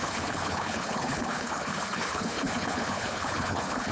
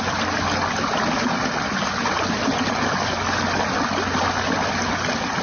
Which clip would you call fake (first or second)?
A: first